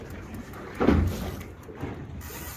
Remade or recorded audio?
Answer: recorded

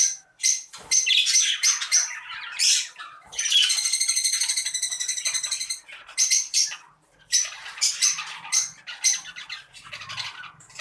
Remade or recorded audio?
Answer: remade